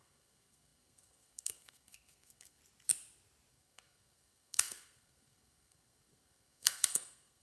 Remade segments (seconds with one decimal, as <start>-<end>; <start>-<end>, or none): 0.0-2.6; 3.5-7.4